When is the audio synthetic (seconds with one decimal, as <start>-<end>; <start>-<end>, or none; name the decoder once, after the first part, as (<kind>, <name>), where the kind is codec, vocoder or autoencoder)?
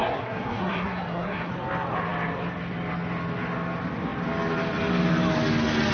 0.0-1.5 (codec, SNAC)